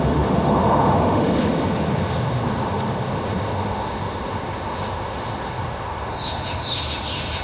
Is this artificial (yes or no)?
yes